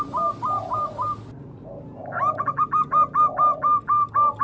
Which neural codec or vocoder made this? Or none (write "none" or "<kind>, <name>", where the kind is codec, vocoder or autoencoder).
none